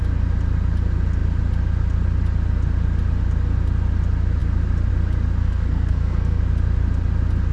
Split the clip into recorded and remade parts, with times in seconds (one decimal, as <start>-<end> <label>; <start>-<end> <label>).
0.0-5.4 recorded; 5.4-6.4 remade; 6.4-7.5 recorded